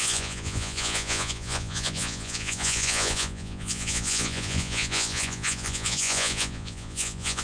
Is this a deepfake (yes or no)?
yes